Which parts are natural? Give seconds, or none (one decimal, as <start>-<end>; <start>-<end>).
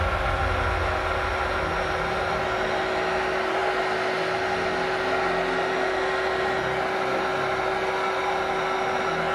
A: 0.0-9.3